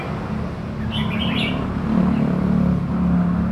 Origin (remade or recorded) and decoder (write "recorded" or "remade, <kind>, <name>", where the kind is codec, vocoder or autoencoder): recorded